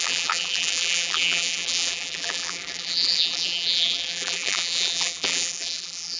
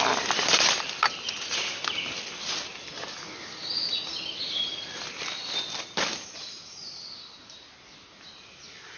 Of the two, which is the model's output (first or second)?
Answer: first